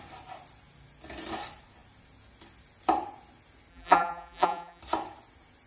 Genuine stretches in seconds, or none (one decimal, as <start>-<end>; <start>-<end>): 0.0-3.7; 4.8-5.7